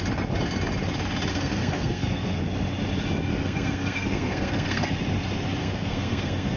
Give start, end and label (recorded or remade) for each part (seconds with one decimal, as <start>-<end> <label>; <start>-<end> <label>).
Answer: 0.0-1.3 recorded; 1.3-2.4 remade; 2.4-3.3 recorded; 3.3-4.9 remade; 4.9-5.6 recorded; 5.6-6.6 remade